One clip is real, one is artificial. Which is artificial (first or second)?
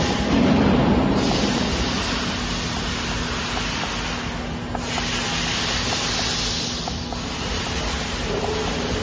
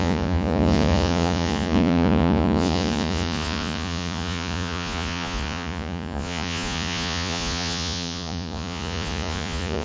second